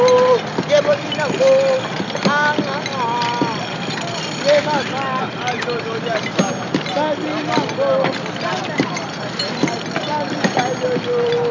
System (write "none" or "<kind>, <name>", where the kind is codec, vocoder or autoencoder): none